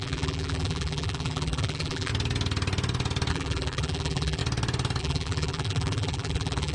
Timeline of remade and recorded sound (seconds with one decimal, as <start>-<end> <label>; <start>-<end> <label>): 0.0-2.1 remade; 2.1-3.3 recorded; 3.3-4.4 remade; 4.4-5.0 recorded; 5.0-6.7 remade